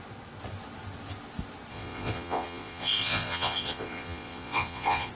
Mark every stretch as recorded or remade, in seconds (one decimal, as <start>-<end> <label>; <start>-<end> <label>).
0.0-1.7 recorded; 1.7-5.1 remade